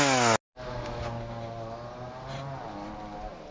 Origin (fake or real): real